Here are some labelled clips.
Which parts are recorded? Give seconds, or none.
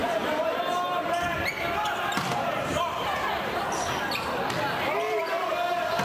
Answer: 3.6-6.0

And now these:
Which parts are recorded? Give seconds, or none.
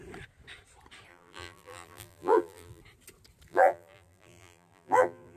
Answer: 0.0-1.1; 2.8-3.5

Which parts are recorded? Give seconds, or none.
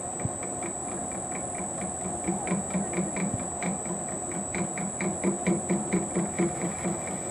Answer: 0.0-7.3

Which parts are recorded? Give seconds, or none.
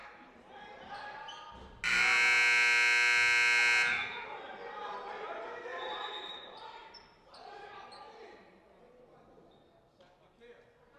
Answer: 1.5-3.9; 4.4-5.7; 8.8-11.0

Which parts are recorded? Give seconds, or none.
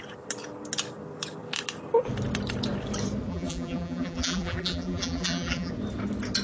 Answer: 0.0-3.3; 5.7-6.4